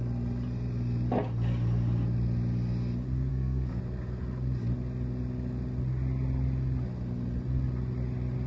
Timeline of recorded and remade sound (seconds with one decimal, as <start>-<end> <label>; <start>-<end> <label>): 0.0-3.3 recorded; 3.3-3.8 remade; 3.8-8.5 recorded